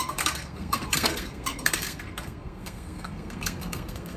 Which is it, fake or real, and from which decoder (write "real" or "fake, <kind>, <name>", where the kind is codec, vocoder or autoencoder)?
fake, codec, SNAC